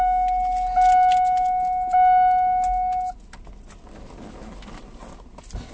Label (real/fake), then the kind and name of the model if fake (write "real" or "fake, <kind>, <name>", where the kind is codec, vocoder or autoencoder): real